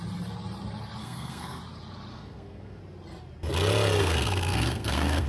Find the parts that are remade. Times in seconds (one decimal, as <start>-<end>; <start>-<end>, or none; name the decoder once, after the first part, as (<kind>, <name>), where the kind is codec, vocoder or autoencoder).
1.0-1.6 (codec, SNAC); 2.1-2.8; 4.0-5.3